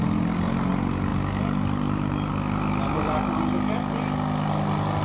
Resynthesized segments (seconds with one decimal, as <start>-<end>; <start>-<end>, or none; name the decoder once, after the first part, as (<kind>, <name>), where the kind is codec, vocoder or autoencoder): none